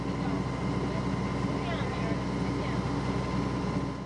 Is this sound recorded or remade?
recorded